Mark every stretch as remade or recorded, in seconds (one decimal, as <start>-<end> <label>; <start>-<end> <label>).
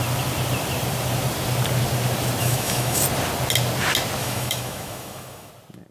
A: 0.0-2.4 recorded; 2.4-3.0 remade; 3.0-4.2 recorded; 4.2-5.5 remade; 5.5-5.9 recorded